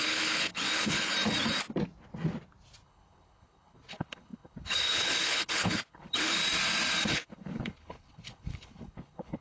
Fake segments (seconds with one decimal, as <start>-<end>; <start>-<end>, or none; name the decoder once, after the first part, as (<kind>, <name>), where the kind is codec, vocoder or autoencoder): 0.0-1.1 (codec, HILCodec); 2.8-6.4; 7.1-9.4